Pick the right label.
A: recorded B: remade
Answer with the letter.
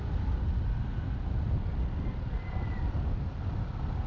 A